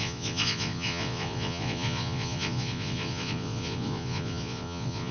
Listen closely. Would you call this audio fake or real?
fake